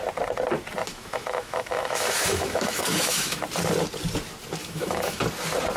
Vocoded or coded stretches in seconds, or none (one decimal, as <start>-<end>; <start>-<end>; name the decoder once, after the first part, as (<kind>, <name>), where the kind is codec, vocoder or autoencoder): 0.9-3.4 (autoencoder, DAC-VAE); 4.6-5.2